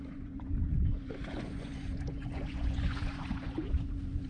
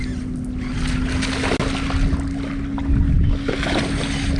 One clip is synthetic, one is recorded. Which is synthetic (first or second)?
first